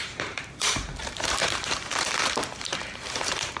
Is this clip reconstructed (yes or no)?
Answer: yes